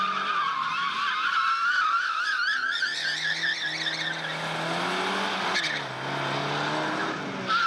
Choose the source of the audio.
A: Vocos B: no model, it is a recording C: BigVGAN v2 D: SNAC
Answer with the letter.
B